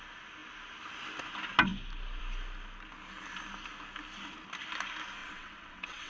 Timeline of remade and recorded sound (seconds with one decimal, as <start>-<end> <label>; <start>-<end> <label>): 0.0-5.2 recorded; 5.2-6.1 remade